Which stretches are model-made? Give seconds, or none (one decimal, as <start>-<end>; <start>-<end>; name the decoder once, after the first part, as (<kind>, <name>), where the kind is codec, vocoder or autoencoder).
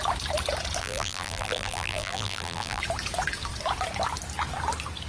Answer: 0.8-2.8 (vocoder, BigVGAN v2)